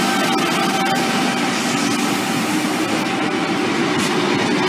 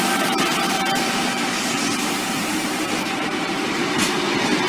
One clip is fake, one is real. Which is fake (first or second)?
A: second